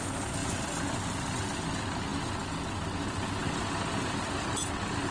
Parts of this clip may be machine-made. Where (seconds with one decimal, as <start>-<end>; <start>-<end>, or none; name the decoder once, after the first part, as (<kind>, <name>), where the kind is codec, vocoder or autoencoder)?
none